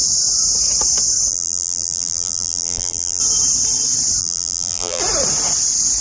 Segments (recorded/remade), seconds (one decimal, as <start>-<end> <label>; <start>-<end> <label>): 0.0-1.3 recorded; 1.3-3.2 remade; 3.2-4.2 recorded; 4.2-5.0 remade; 5.0-6.0 recorded